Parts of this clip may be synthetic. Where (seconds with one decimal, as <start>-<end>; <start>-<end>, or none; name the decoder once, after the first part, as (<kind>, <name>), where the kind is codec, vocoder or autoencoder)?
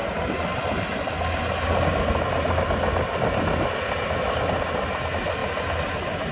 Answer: none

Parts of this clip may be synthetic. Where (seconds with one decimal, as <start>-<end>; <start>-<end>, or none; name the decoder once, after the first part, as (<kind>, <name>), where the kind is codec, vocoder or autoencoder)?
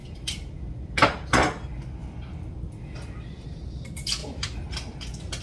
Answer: 0.0-0.7 (vocoder, BigVGAN v2); 2.0-3.1; 4.2-4.7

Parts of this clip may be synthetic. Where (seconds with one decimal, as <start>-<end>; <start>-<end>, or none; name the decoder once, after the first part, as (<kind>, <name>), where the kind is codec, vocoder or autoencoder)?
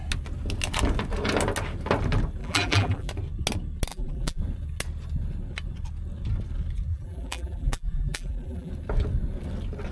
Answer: 2.4-3.1 (vocoder, BigVGAN v2); 3.9-4.4; 6.9-8.7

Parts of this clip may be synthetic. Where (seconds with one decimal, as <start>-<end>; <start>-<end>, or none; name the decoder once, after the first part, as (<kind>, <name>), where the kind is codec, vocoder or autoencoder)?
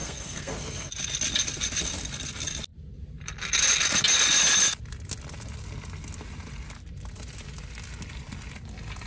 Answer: 0.0-0.9 (codec, SNAC)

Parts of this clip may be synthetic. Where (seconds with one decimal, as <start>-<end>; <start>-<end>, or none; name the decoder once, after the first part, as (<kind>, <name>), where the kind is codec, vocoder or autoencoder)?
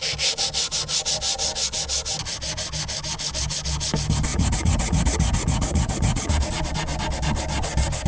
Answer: 4.3-6.5 (vocoder, Vocos)